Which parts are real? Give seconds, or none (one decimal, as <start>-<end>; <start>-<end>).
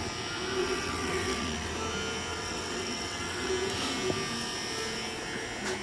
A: 0.0-0.6; 1.7-2.3; 3.5-5.8